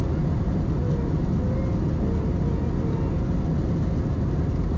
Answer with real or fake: real